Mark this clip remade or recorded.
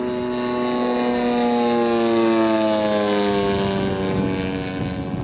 recorded